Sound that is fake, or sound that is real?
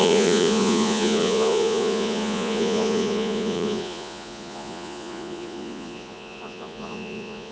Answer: fake